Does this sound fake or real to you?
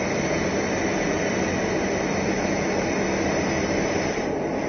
real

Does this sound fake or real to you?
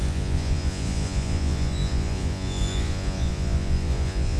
fake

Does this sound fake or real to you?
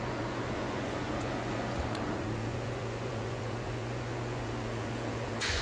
fake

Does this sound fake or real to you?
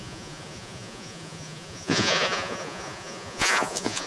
fake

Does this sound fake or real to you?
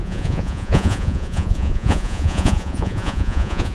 fake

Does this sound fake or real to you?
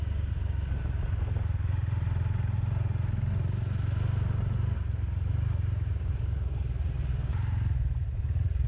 real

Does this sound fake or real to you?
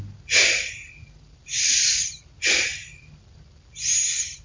real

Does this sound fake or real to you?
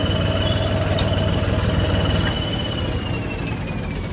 real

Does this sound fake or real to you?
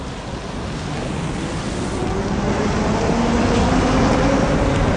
real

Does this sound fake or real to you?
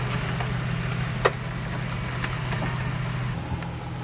real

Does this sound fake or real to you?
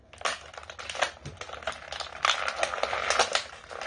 real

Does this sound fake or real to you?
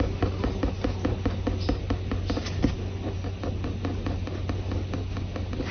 real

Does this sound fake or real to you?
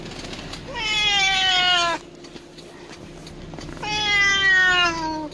real